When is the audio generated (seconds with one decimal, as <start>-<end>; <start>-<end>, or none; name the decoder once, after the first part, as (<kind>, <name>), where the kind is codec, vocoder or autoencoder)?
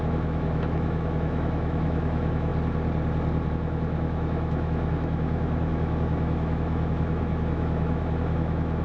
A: 0.0-2.5 (autoencoder, DAC-VAE); 3.5-8.8